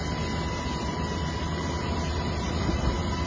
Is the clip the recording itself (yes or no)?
yes